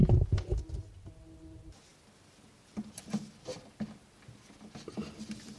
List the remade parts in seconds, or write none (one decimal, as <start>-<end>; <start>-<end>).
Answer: none